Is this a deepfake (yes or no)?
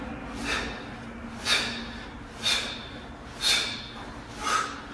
no